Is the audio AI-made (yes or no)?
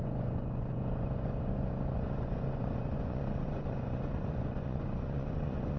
yes